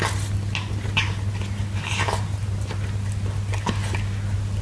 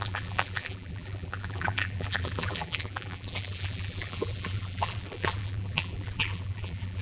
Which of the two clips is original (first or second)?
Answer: first